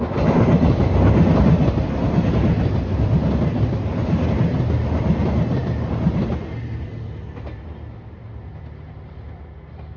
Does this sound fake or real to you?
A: real